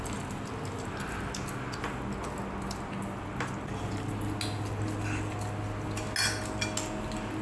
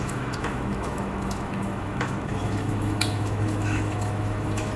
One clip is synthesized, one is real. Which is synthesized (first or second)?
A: second